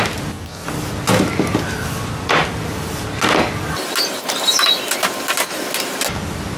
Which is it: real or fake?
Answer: real